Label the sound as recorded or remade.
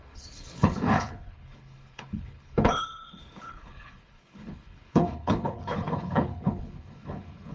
remade